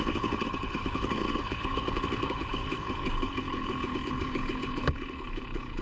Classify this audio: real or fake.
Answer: fake